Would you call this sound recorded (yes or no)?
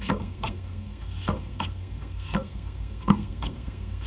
no